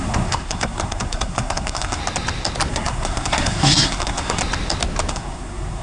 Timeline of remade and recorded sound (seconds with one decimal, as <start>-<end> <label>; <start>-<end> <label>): 0.0-2.0 remade; 2.0-2.7 recorded; 2.7-4.4 remade; 4.4-5.1 recorded; 5.1-5.8 remade